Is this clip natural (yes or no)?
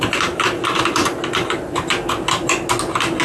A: yes